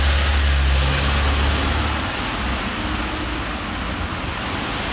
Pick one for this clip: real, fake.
real